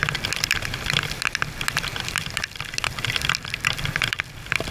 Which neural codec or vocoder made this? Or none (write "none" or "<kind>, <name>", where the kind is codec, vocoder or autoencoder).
vocoder, BigVGAN v2